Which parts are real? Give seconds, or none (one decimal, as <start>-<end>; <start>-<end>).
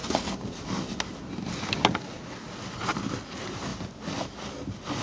0.0-5.0